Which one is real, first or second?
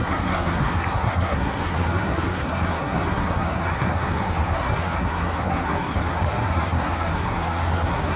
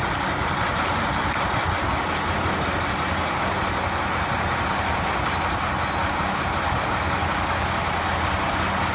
second